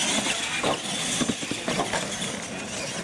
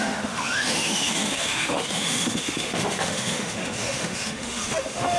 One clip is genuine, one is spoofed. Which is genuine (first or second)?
first